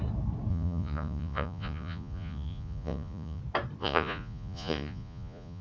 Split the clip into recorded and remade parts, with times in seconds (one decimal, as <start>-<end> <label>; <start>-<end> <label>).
0.0-0.5 recorded; 0.5-3.4 remade; 3.4-3.8 recorded; 3.8-5.6 remade